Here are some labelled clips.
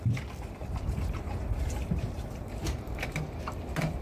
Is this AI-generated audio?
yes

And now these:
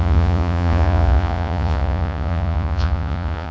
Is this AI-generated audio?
yes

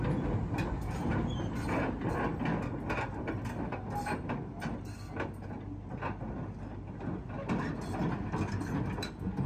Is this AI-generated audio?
no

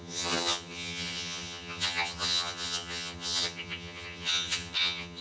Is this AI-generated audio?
yes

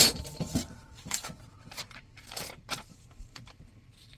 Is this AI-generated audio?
yes